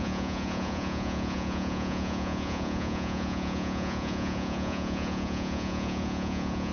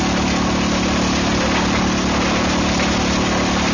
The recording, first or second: second